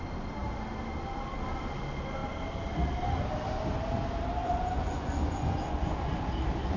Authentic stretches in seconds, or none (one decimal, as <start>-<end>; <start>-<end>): 0.0-4.4; 6.1-6.8